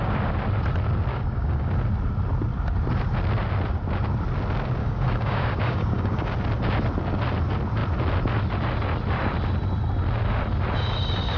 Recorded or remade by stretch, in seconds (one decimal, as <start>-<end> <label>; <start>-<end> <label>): 0.0-1.1 recorded; 1.1-1.7 remade; 1.7-4.8 recorded; 4.8-6.3 remade; 6.3-11.4 recorded